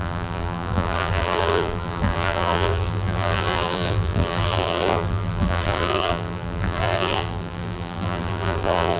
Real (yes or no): no